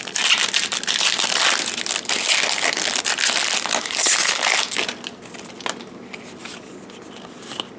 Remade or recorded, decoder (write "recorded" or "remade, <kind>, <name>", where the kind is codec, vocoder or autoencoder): recorded